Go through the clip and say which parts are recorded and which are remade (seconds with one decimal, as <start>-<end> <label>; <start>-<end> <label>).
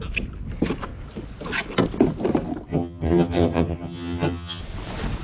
0.0-2.7 recorded; 2.7-4.6 remade; 4.6-5.2 recorded